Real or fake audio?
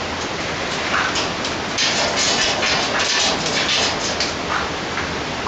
real